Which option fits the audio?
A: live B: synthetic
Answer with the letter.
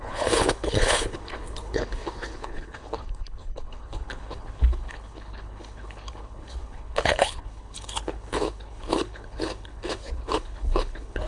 B